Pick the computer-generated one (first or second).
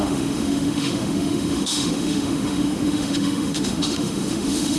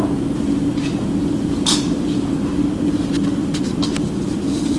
first